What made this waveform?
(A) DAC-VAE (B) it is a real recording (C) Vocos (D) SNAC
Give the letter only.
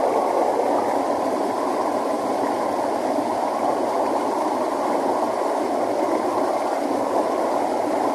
B